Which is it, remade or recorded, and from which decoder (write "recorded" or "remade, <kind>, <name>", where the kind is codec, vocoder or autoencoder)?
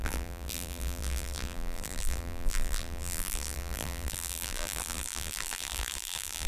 remade, vocoder, BigVGAN v2